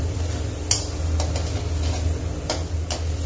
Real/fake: real